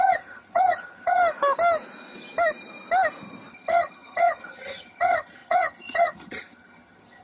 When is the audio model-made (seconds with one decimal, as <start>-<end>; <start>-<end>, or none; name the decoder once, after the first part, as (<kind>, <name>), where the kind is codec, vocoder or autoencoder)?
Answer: 0.0-1.2 (vocoder, HiFi-GAN); 3.5-7.2